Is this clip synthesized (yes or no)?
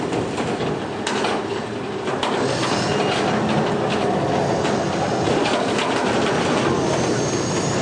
no